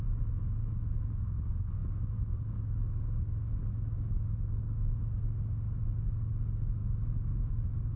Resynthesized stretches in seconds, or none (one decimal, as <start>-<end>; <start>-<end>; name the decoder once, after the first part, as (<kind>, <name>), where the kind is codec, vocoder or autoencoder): none